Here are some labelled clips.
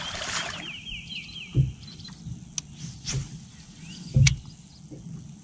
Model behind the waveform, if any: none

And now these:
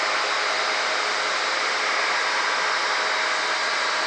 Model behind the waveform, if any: none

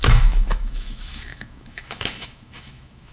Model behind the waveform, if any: autoencoder, DAC-VAE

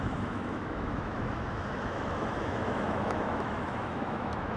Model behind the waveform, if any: autoencoder, DAC-VAE